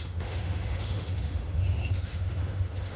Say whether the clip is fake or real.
fake